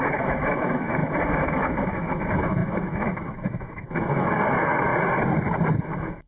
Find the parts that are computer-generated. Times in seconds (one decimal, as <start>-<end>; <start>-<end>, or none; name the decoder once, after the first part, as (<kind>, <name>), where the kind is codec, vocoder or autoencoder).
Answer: 0.0-4.9 (autoencoder, DAC-VAE); 5.8-6.3